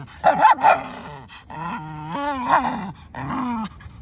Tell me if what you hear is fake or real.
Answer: real